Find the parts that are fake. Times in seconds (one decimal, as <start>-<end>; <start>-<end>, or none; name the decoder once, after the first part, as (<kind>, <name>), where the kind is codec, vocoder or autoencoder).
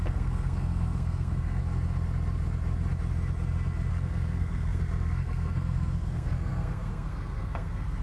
0.0-1.6 (codec, SNAC); 3.9-8.0